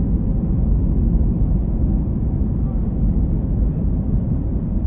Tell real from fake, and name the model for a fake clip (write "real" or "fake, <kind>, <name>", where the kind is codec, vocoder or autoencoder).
real